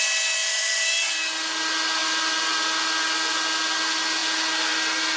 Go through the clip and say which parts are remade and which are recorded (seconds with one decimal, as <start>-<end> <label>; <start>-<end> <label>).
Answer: 0.0-0.4 recorded; 0.4-1.1 remade; 1.1-2.0 recorded; 2.0-2.5 remade; 2.5-5.2 recorded